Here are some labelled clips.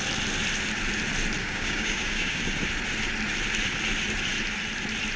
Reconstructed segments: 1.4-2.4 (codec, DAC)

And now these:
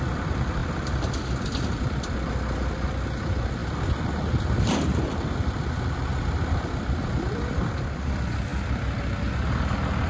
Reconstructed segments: none

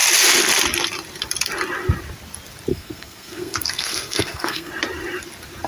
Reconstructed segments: 2.7-4.7 (codec, SNAC)

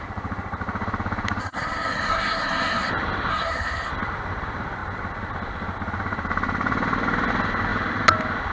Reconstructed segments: 1.4-2.9 (codec, SNAC); 3.3-3.9

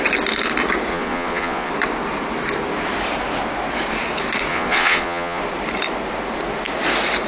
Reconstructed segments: 0.9-1.7 (vocoder, Vocos); 4.5-5.4

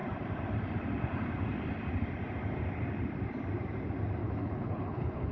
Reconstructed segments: 4.2-5.3 (codec, HILCodec)

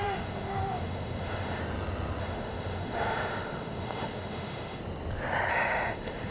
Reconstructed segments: 0.0-1.6 (autoencoder, DAC-VAE); 2.2-4.8; 5.5-6.3